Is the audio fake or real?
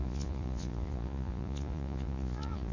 fake